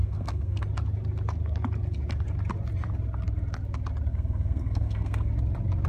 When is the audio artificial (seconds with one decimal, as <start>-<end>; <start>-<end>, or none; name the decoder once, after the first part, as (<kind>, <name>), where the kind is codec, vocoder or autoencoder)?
0.0-0.6 (codec, SNAC); 4.1-5.3

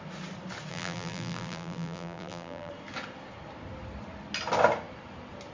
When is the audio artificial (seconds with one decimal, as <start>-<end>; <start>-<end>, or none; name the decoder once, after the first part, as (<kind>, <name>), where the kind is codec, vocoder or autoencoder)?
0.7-2.7 (vocoder, BigVGAN v2)

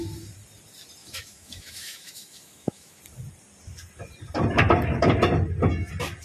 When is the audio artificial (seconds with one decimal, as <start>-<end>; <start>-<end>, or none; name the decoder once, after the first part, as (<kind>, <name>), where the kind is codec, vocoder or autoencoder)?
1.0-3.0 (autoencoder, DAC-VAE)

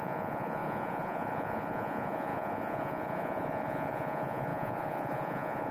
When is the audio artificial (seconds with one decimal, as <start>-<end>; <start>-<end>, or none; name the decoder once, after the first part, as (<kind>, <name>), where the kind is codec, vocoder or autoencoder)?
0.0-5.7 (vocoder, Vocos)

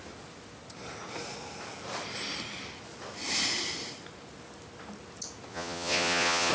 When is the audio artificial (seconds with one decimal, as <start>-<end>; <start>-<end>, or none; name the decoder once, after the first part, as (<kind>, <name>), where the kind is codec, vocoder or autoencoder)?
5.5-6.5 (vocoder, Vocos)